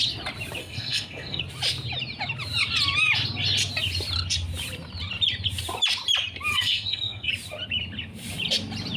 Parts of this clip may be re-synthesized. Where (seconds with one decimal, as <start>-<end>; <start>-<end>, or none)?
0.6-1.4; 6.5-7.3